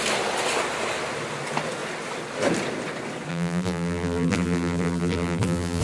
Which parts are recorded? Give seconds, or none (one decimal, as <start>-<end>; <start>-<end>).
0.0-3.3